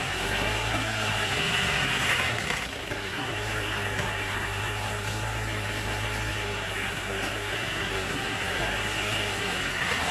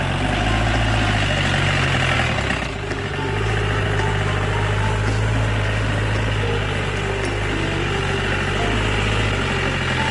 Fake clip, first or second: first